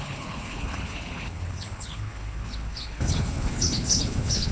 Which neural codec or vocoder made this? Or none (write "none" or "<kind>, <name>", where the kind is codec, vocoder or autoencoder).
codec, HILCodec